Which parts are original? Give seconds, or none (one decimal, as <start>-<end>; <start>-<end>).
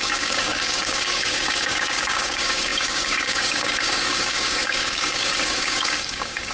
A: none